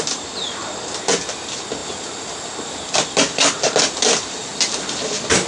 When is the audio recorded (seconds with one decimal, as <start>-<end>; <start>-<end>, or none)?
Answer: 0.0-5.5